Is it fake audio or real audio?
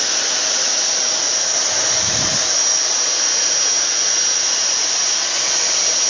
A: real